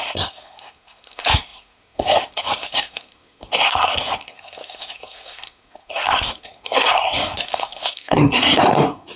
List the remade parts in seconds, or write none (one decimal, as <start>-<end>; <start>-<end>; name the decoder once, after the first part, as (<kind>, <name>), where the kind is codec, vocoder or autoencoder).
0.0-9.2 (codec, SNAC)